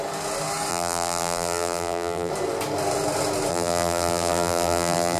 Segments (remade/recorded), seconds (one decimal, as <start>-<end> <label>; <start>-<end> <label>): 0.0-0.7 recorded; 0.7-2.3 remade; 2.3-3.5 recorded; 3.5-5.2 remade

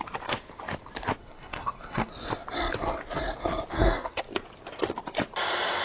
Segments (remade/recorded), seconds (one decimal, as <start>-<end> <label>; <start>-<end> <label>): 0.0-1.2 recorded; 1.2-2.1 remade; 2.1-3.7 recorded; 3.7-4.2 remade; 4.2-5.8 recorded

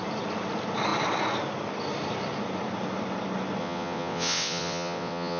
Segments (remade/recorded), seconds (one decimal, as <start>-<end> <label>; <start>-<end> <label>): 0.0-3.6 recorded; 3.6-5.4 remade

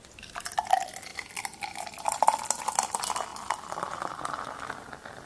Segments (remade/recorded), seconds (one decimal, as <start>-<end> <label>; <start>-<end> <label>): 0.0-5.3 recorded

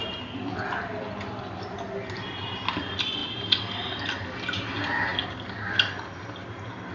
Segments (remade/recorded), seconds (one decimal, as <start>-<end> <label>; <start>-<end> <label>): 0.0-6.9 recorded

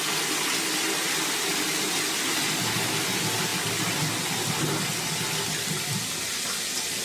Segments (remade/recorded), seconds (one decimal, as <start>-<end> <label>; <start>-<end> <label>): 0.0-7.0 recorded

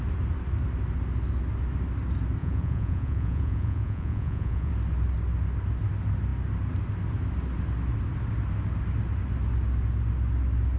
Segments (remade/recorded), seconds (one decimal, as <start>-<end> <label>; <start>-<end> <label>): 0.0-2.4 recorded; 2.4-4.7 remade; 4.7-10.8 recorded

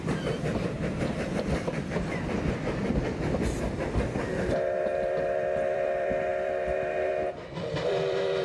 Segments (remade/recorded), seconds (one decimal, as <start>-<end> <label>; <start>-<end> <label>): 0.0-8.4 remade